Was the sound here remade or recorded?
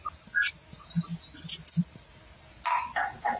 recorded